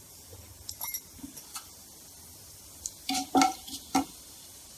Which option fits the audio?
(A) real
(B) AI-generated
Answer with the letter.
A